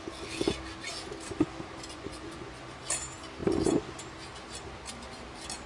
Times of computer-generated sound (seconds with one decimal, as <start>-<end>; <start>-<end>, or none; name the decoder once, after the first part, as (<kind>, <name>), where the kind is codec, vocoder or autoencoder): 1.9-2.8 (vocoder, Vocos)